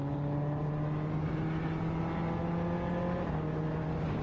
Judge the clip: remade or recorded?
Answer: recorded